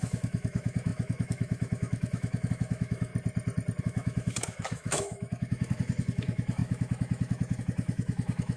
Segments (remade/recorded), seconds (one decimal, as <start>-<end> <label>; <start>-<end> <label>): 0.0-3.1 remade; 3.1-3.8 recorded; 3.8-8.6 remade

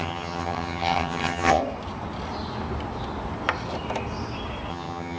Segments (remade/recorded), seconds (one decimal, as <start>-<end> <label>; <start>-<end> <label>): 0.0-1.6 remade; 1.6-4.7 recorded; 4.7-5.2 remade

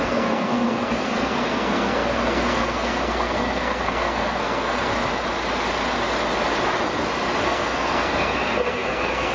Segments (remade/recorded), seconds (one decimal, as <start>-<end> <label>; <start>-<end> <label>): 0.0-4.9 remade; 4.9-7.4 recorded; 7.4-9.3 remade

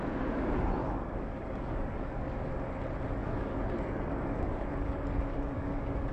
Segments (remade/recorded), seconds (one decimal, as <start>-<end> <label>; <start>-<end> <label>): 0.0-0.8 recorded; 0.8-2.5 remade; 2.5-3.2 recorded; 3.2-6.1 remade

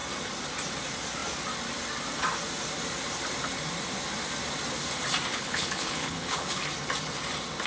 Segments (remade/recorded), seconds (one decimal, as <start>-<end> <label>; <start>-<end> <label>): 0.0-5.3 recorded; 5.3-6.6 remade; 6.6-7.7 recorded

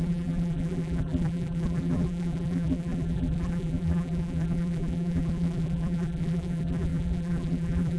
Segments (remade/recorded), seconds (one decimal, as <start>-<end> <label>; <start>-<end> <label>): 0.0-8.0 remade